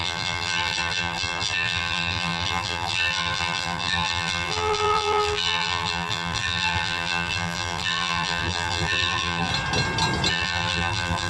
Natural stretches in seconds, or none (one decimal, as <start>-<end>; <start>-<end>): 9.5-10.3